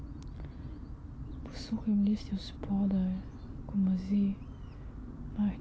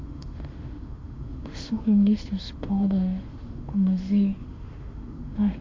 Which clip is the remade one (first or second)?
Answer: second